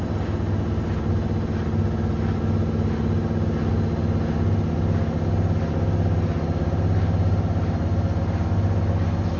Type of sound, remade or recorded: recorded